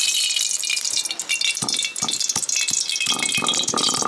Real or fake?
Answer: fake